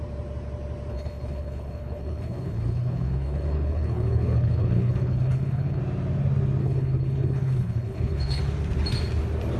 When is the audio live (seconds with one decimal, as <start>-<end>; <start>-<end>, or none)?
0.0-0.9; 5.8-6.6; 8.4-9.6